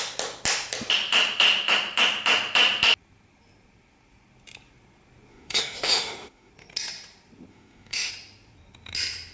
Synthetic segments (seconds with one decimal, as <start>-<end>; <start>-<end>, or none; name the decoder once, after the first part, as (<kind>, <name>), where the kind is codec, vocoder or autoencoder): 5.3-6.5 (autoencoder, DAC-VAE); 7.5-8.1